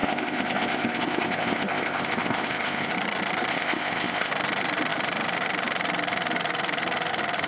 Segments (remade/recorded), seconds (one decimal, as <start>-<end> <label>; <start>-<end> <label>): 0.0-2.9 remade; 2.9-3.5 recorded; 3.5-4.3 remade; 4.3-7.5 recorded